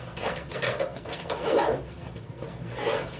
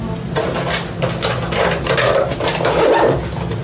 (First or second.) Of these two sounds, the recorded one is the second